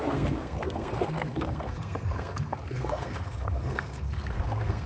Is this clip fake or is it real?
fake